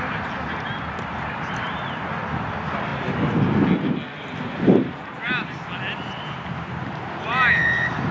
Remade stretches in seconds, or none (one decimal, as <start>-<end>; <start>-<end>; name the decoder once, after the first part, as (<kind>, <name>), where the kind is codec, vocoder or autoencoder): 0.0-2.9 (vocoder, BigVGAN v2)

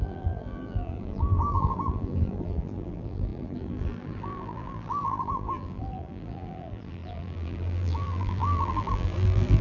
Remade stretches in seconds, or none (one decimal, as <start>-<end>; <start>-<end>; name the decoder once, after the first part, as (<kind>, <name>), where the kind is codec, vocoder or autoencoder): 0.0-9.6 (vocoder, BigVGAN v2)

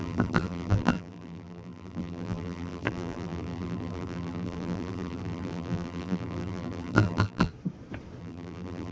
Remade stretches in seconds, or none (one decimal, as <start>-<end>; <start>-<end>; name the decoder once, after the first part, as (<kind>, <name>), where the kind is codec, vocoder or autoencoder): 0.0-7.5 (vocoder, BigVGAN v2); 8.2-8.9

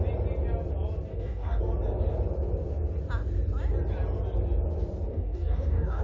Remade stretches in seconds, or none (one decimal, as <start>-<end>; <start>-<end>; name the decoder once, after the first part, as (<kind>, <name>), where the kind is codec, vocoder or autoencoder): 1.1-1.6 (codec, DAC); 5.1-6.0

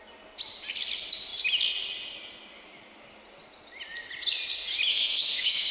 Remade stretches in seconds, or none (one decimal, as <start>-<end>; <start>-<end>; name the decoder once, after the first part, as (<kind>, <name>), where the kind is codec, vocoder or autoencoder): 4.9-5.7 (autoencoder, DAC-VAE)

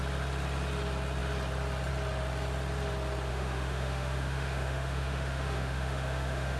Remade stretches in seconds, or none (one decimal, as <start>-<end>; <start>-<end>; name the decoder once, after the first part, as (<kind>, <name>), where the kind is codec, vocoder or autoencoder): 3.3-6.6 (autoencoder, DAC-VAE)

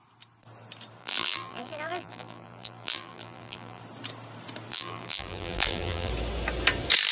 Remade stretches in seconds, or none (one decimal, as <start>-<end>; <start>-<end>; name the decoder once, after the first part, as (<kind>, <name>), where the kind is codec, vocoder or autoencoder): 1.0-3.8 (vocoder, BigVGAN v2); 4.7-6.1